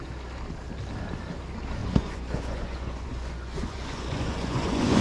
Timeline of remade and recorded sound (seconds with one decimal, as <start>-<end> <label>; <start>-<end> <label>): 0.0-1.8 recorded; 1.8-5.0 remade

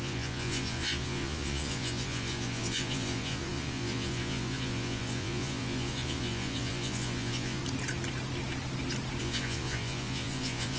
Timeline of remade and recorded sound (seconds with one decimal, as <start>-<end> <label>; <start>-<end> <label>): 0.0-7.6 remade; 7.6-9.2 recorded; 9.2-10.8 remade

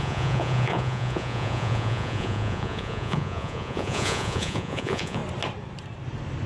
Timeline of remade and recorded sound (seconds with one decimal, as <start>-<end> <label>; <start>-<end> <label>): 0.0-5.2 remade; 5.2-6.5 recorded

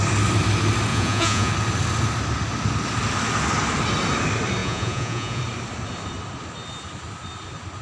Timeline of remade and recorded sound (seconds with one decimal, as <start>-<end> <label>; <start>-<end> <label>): 0.0-0.9 recorded; 0.9-1.5 remade; 1.5-4.6 recorded; 4.6-5.4 remade; 5.4-7.8 recorded

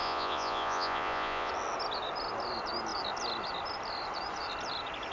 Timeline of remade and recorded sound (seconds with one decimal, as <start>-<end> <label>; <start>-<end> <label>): 0.0-1.5 remade; 1.5-5.1 recorded

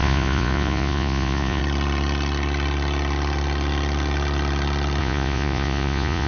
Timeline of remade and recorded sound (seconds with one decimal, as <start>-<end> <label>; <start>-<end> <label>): 0.0-1.6 remade; 1.6-5.0 recorded; 5.0-6.3 remade

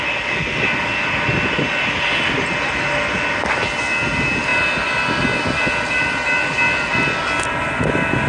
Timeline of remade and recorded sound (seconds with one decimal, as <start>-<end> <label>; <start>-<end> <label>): 0.0-8.3 recorded